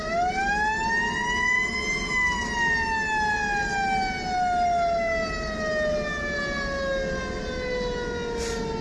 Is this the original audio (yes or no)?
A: yes